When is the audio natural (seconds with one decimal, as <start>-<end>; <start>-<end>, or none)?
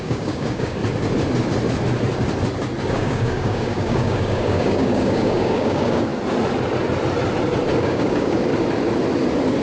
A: 0.8-2.9; 6.1-7.8; 8.5-9.6